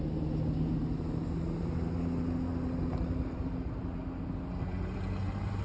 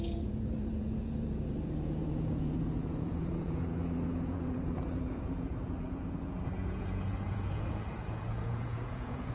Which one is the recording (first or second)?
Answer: first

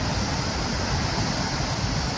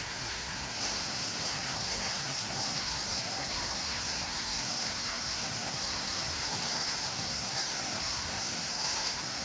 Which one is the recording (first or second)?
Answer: first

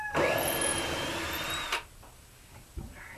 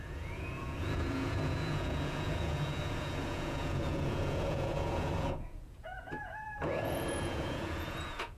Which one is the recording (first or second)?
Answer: first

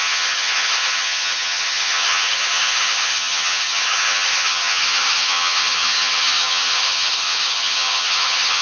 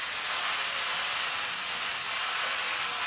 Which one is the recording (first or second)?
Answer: second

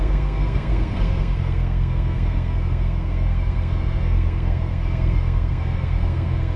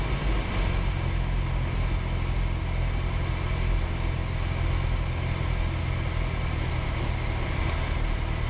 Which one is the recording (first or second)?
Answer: second